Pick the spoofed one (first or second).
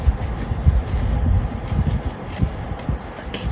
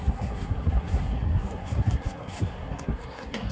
second